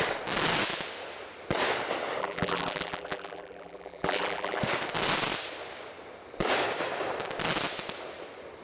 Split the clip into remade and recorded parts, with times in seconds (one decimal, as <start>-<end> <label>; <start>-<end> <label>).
0.0-2.2 recorded; 2.2-4.6 remade; 4.6-8.6 recorded